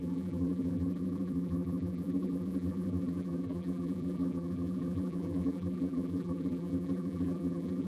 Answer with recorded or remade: remade